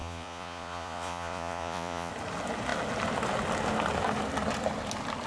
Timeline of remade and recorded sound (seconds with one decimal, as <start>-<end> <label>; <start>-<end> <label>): 0.0-2.1 remade; 2.1-5.3 recorded